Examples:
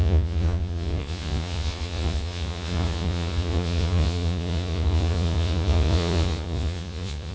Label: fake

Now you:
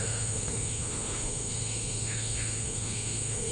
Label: fake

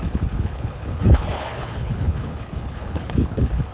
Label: fake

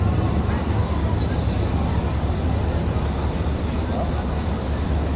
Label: fake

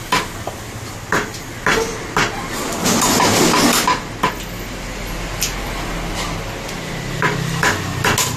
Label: real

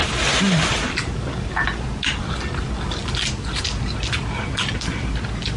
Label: real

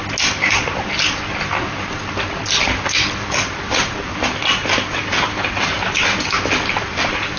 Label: real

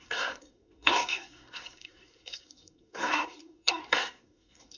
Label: fake